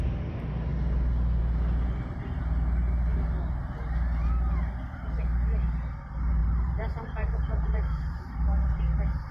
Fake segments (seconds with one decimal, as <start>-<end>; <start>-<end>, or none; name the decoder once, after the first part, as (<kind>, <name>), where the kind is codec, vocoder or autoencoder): 6.4-8.8 (vocoder, BigVGAN v2)